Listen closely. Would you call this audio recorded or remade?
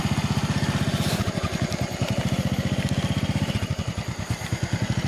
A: recorded